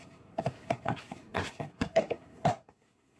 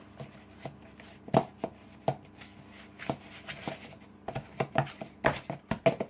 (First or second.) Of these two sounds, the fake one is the first